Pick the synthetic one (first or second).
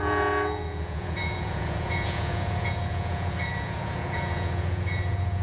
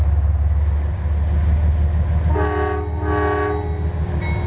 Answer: first